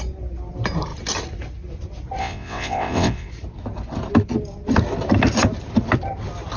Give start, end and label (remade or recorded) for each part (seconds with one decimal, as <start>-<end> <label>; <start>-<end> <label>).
0.0-2.2 recorded; 2.2-3.3 remade; 3.3-6.6 recorded